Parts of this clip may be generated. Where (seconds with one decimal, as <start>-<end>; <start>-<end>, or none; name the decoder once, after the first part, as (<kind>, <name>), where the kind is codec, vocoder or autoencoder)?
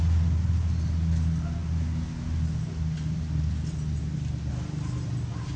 none